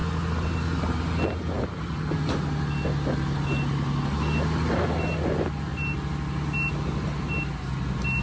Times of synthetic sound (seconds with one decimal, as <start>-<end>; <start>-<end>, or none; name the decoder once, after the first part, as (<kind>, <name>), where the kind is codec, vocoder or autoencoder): none